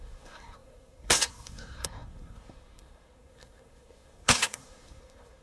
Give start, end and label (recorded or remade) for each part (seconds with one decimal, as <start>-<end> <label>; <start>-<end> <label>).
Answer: 0.0-5.4 remade